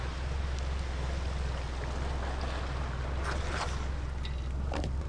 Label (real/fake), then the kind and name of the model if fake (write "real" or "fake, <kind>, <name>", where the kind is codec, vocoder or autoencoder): real